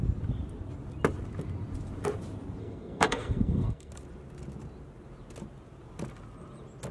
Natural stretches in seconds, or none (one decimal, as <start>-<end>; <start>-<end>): 0.0-2.6; 3.9-6.9